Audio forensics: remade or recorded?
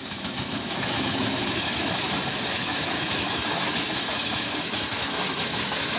remade